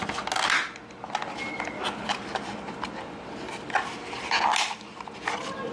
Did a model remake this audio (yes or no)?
no